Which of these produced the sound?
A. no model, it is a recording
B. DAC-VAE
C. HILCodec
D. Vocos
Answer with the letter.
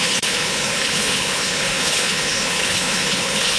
C